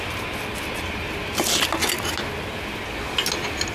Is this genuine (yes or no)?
yes